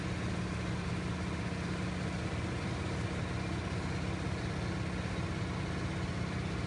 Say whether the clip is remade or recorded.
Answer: recorded